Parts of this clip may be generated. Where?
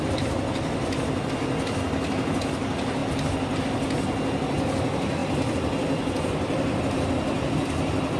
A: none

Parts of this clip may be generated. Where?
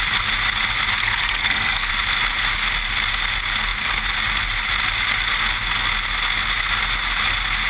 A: 1.0-1.9 (codec, SNAC)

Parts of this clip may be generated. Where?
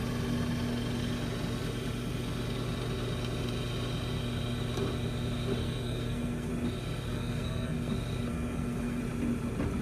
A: 5.6-6.5 (codec, SNAC); 7.1-7.9; 8.3-9.0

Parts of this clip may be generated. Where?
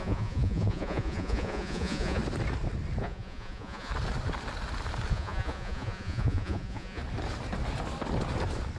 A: 0.0-2.2 (vocoder, Vocos); 3.0-3.9; 5.1-7.0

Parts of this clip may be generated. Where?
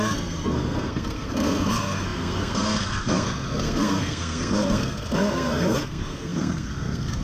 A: 0.0-7.2 (codec, SNAC)